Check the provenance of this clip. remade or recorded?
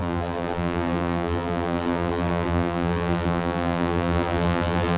remade